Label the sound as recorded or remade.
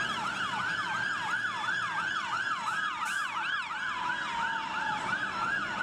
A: recorded